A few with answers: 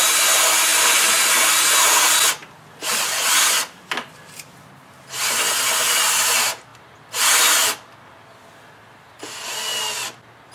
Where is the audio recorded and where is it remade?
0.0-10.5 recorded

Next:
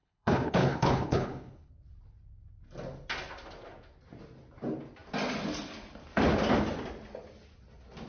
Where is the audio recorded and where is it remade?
0.0-1.7 remade; 1.7-8.1 recorded

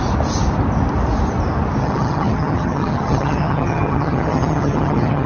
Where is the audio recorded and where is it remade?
0.0-1.8 recorded; 1.8-5.3 remade

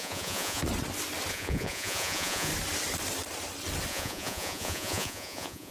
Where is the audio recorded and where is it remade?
0.0-0.6 remade; 0.6-1.3 recorded; 1.3-2.5 remade; 2.5-3.9 recorded; 3.9-5.7 remade